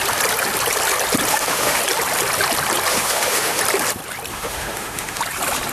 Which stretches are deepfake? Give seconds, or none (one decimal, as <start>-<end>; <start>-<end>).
1.3-1.8; 2.9-3.6; 4.3-5.2